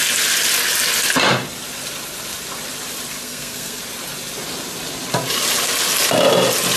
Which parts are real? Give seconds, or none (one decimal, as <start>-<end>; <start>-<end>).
0.0-3.1; 3.8-6.8